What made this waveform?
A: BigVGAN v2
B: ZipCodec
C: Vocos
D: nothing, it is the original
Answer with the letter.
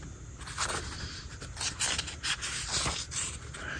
D